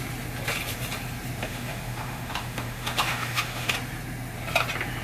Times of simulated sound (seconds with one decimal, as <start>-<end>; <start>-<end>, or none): 1.4-3.7